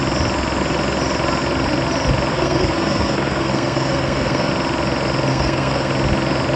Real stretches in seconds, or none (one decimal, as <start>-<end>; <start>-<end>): 0.0-2.3; 4.5-5.3; 5.9-6.6